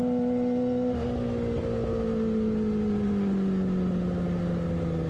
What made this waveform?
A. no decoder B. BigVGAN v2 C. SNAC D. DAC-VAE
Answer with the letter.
A